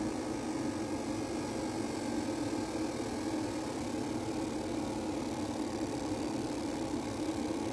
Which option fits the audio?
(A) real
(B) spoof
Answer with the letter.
A